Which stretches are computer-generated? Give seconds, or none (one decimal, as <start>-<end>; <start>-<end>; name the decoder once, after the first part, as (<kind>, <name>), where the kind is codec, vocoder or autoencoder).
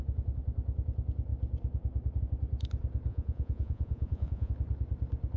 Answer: 3.1-4.5 (vocoder, Vocos)